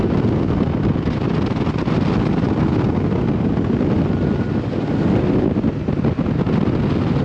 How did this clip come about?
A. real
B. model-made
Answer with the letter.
A